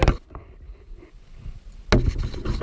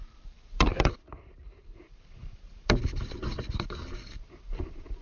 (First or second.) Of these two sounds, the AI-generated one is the second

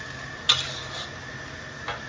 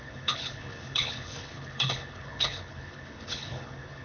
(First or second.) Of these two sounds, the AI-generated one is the second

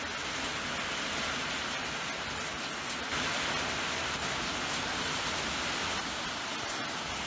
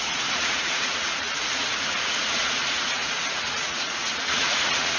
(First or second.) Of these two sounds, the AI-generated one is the second